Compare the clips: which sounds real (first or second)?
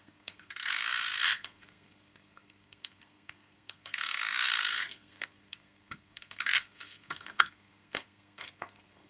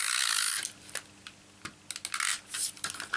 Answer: second